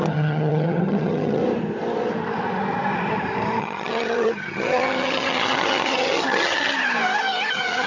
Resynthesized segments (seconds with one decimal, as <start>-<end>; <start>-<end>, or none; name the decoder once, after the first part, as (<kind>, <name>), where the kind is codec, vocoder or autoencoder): 0.0-1.4 (vocoder, HiFi-GAN); 3.6-6.7; 7.5-7.9